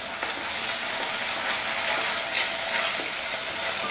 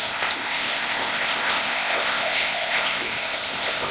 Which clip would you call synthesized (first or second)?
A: second